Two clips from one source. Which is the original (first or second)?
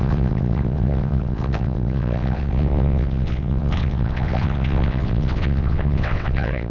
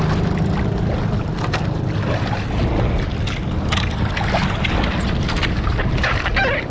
second